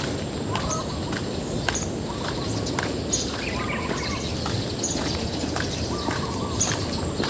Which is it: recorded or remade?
recorded